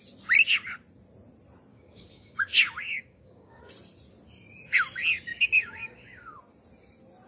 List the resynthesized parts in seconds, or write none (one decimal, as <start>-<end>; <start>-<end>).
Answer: 1.7-3.6; 5.3-6.4